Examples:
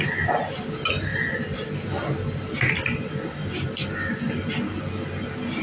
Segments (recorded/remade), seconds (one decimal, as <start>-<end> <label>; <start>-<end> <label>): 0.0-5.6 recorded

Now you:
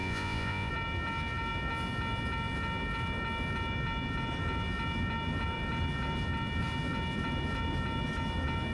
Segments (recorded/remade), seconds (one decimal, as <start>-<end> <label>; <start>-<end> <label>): 0.0-0.7 remade; 0.7-8.7 recorded

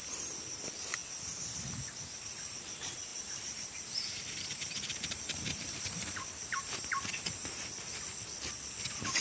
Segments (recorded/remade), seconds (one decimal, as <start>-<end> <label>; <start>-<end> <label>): 0.0-3.1 recorded; 3.1-7.1 remade; 7.1-9.2 recorded

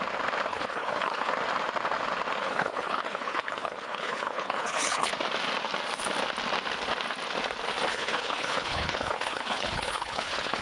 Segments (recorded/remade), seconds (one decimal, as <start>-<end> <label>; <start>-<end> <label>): 0.0-0.5 recorded; 0.5-1.3 remade; 1.3-2.4 recorded; 2.4-5.1 remade; 5.1-7.9 recorded; 7.9-10.6 remade

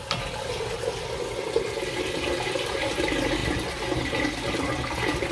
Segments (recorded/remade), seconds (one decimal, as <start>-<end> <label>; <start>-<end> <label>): 0.0-5.3 recorded

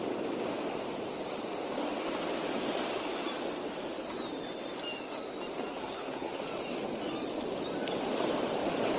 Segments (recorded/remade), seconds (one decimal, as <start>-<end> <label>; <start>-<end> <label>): 0.0-5.7 recorded; 5.7-6.4 remade; 6.4-9.0 recorded